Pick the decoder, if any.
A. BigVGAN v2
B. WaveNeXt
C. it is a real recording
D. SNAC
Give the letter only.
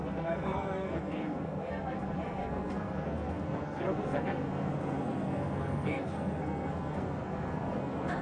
D